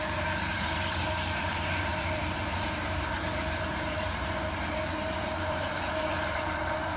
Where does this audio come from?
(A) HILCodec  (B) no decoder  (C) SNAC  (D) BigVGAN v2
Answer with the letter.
D